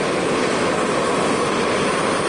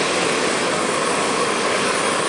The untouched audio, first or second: first